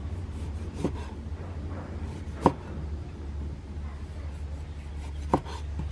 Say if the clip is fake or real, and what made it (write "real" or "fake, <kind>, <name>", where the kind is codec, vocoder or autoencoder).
real